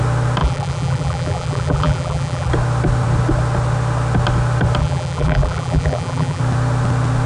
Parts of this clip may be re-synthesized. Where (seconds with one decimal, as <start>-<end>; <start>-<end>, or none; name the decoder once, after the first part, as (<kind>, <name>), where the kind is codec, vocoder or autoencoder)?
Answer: 0.4-2.5 (vocoder, BigVGAN v2); 4.8-6.4